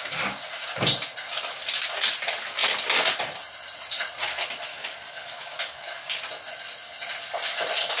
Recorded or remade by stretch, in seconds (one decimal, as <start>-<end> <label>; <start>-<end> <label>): 0.0-4.7 recorded; 4.7-6.2 remade; 6.2-8.0 recorded